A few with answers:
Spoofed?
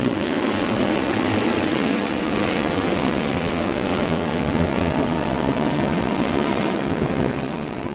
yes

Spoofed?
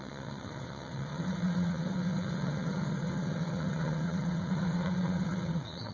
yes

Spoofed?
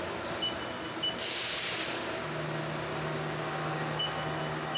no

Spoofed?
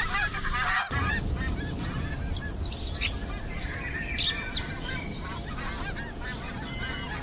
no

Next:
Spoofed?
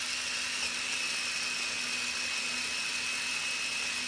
no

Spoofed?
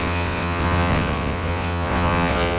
yes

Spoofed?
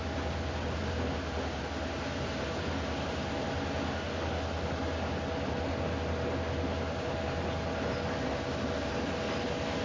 no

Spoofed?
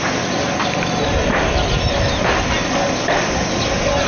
no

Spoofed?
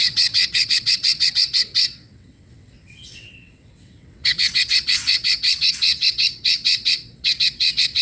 yes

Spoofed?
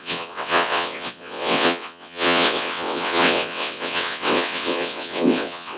yes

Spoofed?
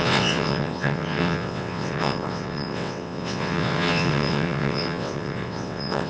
yes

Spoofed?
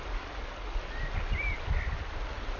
no